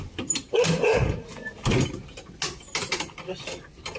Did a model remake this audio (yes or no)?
no